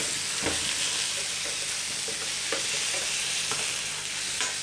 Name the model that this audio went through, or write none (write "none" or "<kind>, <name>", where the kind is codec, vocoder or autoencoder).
none